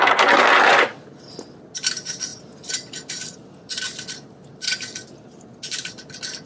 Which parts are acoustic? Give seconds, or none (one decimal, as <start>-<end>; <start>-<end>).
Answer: 0.0-6.5